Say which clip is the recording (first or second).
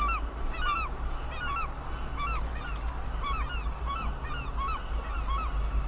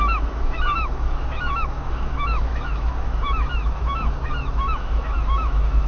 first